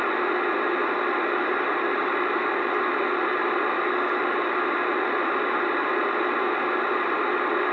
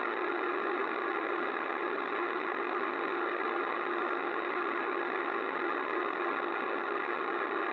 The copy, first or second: second